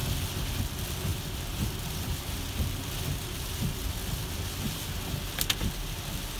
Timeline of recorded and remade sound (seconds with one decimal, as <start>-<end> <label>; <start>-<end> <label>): 0.0-1.1 recorded; 1.1-1.7 remade; 1.7-3.3 recorded; 3.3-4.2 remade; 4.2-6.4 recorded